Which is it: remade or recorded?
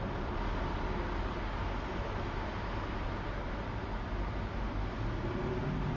recorded